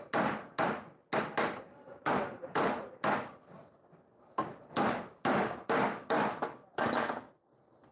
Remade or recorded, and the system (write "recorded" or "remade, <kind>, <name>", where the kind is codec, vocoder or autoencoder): recorded